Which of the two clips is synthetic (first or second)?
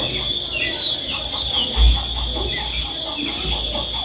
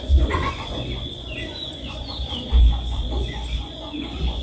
second